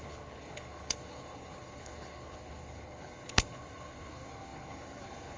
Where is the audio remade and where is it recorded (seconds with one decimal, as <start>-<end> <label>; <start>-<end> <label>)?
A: 0.0-5.4 remade